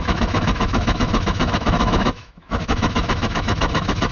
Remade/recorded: remade